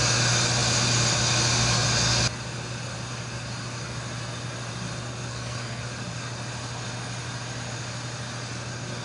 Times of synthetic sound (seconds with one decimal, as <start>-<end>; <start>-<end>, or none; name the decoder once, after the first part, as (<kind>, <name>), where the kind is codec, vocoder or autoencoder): 5.3-5.8 (codec, SNAC)